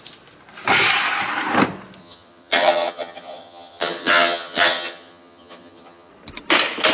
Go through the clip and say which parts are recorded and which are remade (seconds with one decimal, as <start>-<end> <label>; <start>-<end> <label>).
0.0-2.0 recorded; 2.0-6.1 remade; 6.1-6.9 recorded